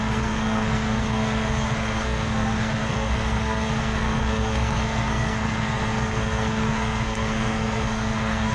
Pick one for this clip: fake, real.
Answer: fake